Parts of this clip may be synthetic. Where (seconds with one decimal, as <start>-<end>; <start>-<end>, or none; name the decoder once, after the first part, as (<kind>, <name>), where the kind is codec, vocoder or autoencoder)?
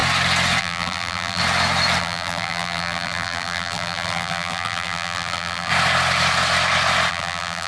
0.6-1.4 (vocoder, BigVGAN v2); 2.0-5.7; 7.1-7.7